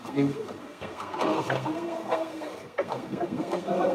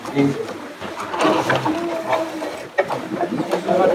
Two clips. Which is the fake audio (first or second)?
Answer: first